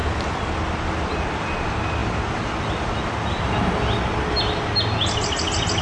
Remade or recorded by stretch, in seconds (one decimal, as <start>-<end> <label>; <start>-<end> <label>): 0.0-5.8 recorded